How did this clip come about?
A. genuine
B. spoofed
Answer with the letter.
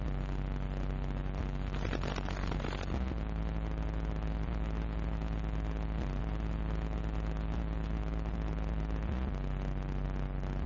A